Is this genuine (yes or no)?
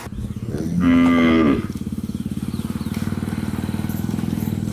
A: yes